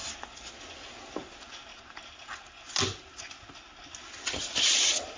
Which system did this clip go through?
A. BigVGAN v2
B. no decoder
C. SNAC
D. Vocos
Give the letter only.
B